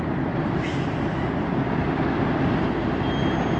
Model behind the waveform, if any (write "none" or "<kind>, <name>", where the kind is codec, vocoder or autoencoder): vocoder, BigVGAN v2